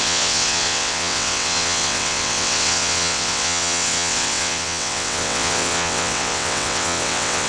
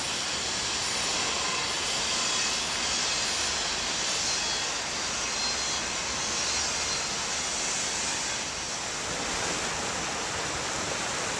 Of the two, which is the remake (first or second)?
first